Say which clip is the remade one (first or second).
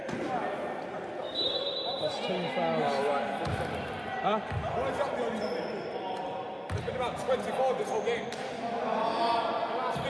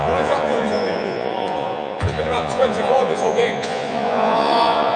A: second